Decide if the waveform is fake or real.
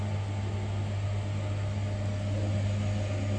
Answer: real